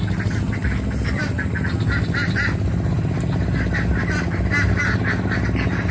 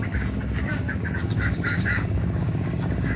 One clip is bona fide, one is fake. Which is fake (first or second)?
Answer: second